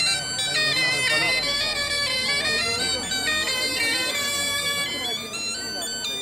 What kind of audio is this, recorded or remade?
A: recorded